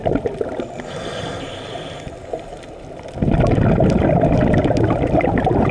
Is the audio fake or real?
real